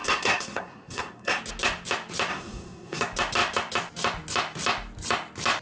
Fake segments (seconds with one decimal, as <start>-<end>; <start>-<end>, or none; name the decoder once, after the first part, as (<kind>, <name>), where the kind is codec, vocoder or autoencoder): 0.0-1.4 (codec, SNAC); 2.3-3.0